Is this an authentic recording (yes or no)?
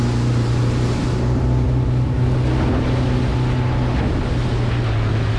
yes